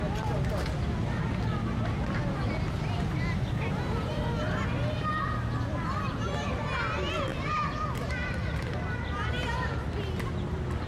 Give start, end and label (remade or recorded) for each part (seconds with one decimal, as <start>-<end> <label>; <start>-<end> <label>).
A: 0.0-7.3 recorded; 7.3-10.3 remade; 10.3-10.9 recorded